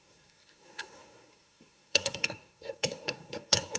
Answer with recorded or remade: remade